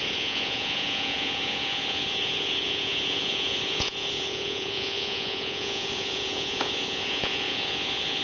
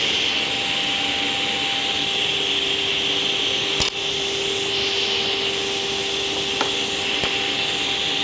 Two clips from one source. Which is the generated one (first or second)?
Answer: first